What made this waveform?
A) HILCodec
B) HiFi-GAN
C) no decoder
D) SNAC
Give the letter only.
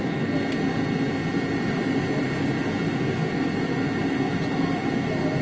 C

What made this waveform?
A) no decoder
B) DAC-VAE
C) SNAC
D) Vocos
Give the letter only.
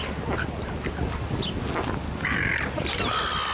A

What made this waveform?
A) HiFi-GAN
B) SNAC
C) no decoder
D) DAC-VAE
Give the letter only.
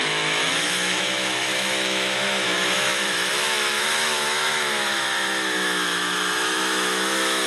D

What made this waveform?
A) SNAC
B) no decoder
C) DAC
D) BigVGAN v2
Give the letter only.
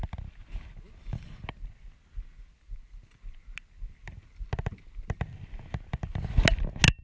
B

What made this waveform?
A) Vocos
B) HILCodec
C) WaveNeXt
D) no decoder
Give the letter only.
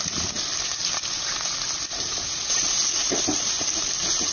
D